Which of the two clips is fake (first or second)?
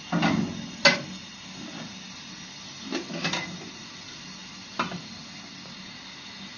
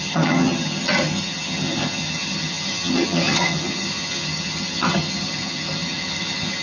second